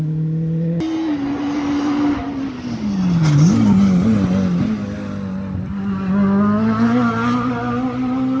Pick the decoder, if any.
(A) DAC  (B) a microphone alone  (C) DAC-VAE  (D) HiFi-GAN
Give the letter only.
B